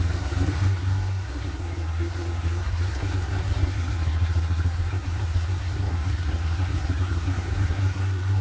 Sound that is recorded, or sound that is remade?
remade